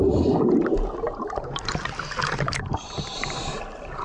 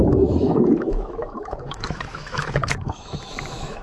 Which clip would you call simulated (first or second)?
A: second